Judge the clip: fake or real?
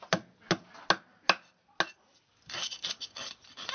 real